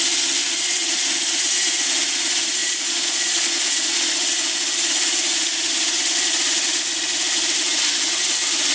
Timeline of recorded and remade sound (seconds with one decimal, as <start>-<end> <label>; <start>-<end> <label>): 0.0-2.6 recorded; 2.6-4.1 remade; 4.1-8.7 recorded